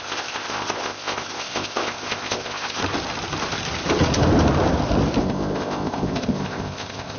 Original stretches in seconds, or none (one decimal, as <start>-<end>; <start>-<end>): 2.8-5.2